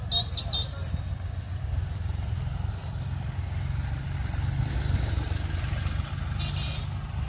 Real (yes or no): yes